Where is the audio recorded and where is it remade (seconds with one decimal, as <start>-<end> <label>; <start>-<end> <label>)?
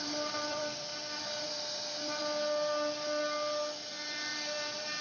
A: 0.0-0.9 remade; 0.9-3.9 recorded; 3.9-5.0 remade